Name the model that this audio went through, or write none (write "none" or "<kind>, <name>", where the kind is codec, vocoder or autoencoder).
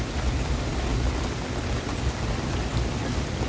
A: none